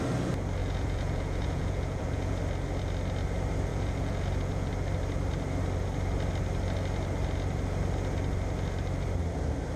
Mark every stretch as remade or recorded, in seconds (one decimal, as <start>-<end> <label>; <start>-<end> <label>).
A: 0.0-0.6 recorded; 0.6-2.4 remade; 2.4-3.7 recorded; 3.7-4.7 remade; 4.7-9.8 recorded